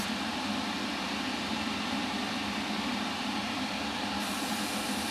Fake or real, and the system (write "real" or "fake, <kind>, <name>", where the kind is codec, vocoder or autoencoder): real